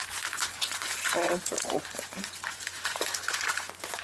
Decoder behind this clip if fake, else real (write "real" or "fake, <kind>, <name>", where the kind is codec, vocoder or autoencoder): fake, vocoder, Vocos